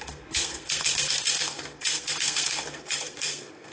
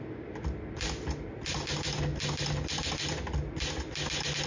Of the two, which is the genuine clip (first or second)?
second